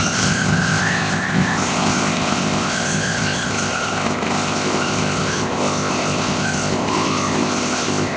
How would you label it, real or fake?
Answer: fake